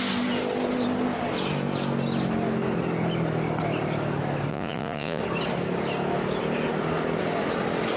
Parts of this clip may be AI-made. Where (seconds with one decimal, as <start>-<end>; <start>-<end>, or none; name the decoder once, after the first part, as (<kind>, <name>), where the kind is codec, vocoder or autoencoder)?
4.5-5.2 (vocoder, Vocos)